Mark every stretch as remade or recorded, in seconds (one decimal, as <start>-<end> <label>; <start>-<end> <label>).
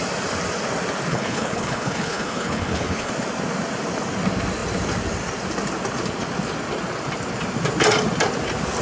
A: 0.0-1.1 recorded; 1.1-3.1 remade; 3.1-8.8 recorded